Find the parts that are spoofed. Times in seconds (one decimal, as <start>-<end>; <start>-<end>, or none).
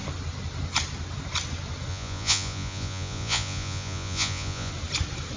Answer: 1.9-4.7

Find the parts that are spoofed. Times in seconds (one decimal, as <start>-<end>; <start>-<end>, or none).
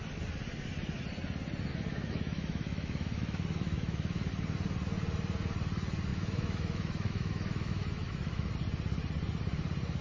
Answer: 1.7-4.3; 6.1-8.5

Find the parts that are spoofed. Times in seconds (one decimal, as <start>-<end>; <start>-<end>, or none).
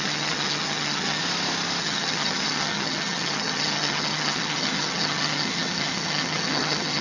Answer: 0.0-1.2; 1.8-7.0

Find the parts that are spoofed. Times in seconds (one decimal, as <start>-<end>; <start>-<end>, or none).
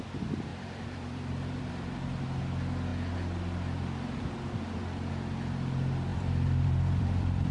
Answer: 0.5-1.7; 6.1-7.5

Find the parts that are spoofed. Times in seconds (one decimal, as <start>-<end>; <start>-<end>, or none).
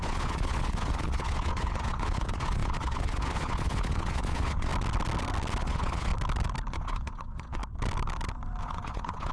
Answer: 0.0-4.7; 5.6-6.1; 6.7-7.6; 8.6-9.3